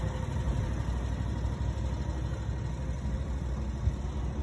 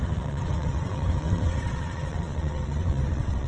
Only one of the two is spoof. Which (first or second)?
second